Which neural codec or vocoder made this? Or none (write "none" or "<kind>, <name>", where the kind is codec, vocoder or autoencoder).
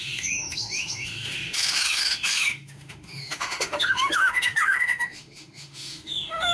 autoencoder, DAC-VAE